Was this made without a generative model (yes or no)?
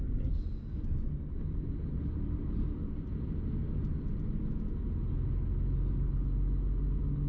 yes